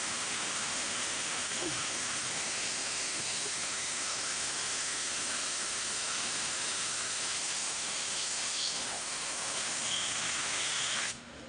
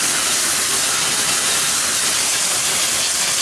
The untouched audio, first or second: second